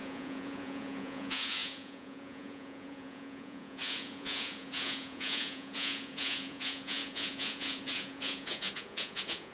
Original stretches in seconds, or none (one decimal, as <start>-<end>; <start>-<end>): none